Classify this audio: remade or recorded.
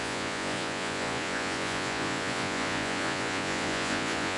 remade